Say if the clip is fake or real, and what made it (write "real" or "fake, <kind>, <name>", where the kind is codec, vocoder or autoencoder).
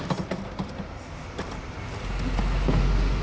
real